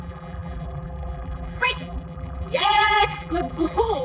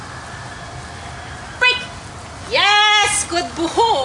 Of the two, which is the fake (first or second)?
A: first